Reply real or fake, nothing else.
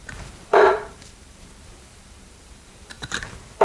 fake